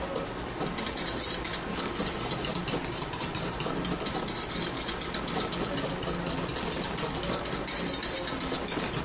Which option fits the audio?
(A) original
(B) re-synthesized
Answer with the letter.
A